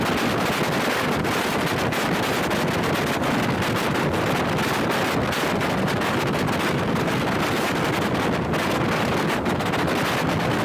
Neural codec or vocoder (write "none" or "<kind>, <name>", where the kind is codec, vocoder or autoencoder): none